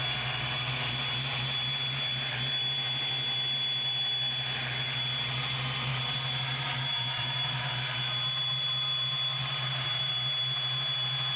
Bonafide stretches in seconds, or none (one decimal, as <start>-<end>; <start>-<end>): 0.0-5.9; 7.7-9.3; 10.1-11.4